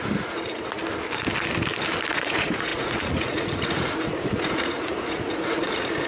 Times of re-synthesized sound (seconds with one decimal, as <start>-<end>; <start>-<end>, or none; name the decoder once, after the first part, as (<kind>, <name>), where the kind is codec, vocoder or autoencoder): 0.0-0.8 (vocoder, Vocos); 2.1-6.1